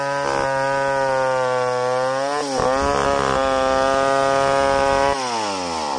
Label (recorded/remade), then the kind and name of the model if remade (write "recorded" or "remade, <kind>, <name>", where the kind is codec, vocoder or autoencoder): recorded